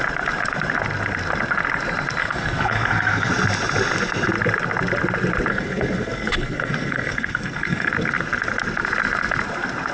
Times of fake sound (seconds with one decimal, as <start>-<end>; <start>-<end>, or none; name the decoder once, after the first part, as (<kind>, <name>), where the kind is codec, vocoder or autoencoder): 2.2-3.3 (codec, SNAC); 5.5-7.9